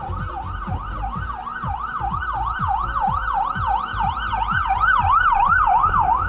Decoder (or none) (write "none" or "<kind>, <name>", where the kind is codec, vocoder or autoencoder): none